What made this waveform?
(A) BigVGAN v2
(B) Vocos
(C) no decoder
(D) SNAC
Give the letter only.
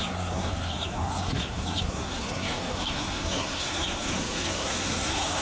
D